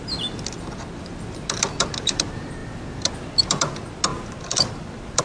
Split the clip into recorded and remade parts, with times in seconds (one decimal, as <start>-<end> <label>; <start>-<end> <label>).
0.0-5.2 recorded